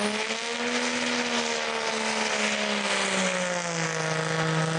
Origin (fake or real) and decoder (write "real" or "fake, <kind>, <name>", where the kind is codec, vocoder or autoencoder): real